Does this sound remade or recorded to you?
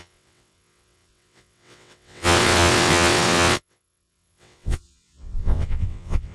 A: remade